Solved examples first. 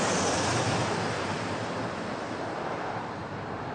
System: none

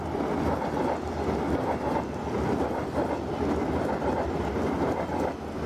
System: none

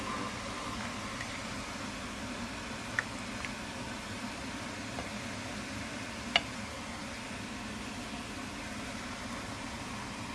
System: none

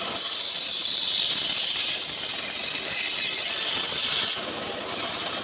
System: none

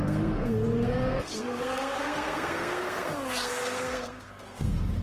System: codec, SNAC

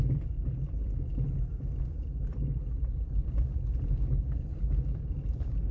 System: none